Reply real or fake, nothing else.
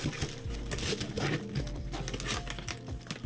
real